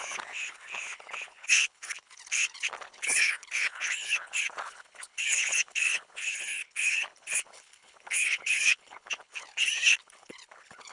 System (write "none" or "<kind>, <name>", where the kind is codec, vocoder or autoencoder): codec, HILCodec